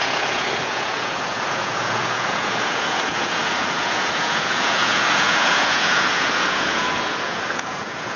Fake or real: fake